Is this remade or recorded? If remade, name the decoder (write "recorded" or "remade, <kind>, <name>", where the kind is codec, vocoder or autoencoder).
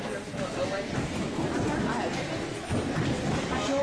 recorded